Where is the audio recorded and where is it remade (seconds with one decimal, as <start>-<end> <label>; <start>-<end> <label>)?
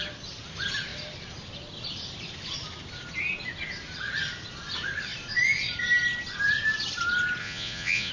0.0-7.4 recorded; 7.4-8.1 remade